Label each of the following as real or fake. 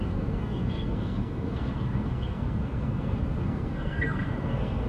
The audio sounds fake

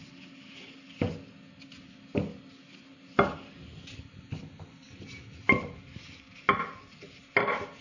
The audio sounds real